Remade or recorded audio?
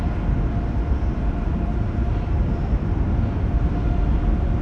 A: recorded